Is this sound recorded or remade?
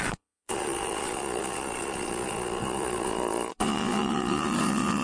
remade